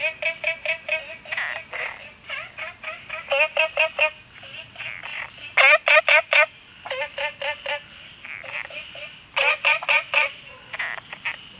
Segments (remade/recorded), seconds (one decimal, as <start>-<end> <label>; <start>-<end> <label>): 0.0-11.6 recorded